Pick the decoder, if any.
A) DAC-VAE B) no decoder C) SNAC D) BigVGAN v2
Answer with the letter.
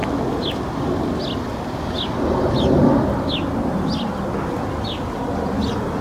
B